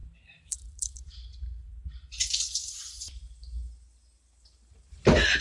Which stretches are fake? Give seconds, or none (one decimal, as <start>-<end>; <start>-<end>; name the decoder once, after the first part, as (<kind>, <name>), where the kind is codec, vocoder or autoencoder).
0.0-3.2 (vocoder, BigVGAN v2)